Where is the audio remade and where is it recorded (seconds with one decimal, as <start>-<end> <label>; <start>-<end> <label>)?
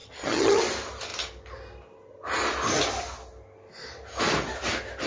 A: 0.0-0.6 remade; 0.6-5.1 recorded